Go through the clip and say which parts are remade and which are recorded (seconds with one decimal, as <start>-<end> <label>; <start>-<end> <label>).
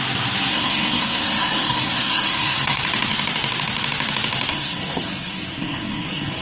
0.0-0.5 recorded; 0.5-2.8 remade; 2.8-4.5 recorded; 4.5-6.4 remade